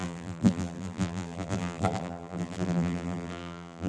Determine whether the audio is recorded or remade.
remade